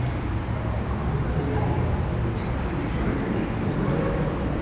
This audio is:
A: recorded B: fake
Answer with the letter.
A